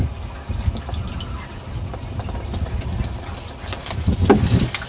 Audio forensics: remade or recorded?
recorded